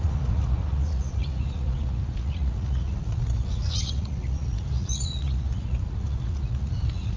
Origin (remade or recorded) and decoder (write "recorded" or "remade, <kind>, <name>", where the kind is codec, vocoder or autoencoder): remade, vocoder, Vocos